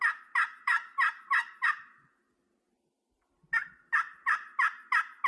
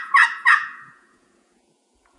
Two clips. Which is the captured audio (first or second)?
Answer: first